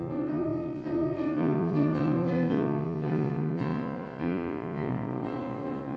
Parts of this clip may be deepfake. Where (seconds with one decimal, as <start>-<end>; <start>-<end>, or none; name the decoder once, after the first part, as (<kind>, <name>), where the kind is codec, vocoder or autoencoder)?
0.0-6.0 (vocoder, Vocos)